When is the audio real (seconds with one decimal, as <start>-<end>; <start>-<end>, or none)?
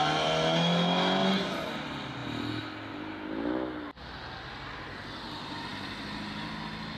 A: 0.0-1.2; 1.7-7.0